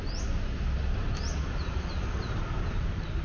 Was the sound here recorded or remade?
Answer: recorded